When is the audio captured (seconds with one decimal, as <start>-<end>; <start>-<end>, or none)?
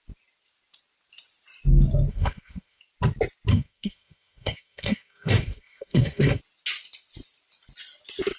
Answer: 0.0-2.1; 2.8-3.5; 6.4-8.4